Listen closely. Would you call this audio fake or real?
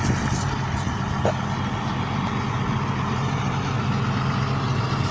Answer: real